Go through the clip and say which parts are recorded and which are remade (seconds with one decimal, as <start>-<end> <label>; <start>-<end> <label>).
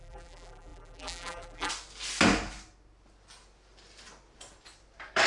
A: 0.0-1.7 remade; 1.7-5.3 recorded